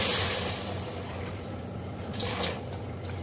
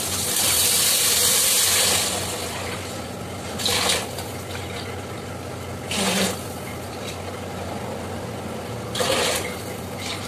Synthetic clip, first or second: first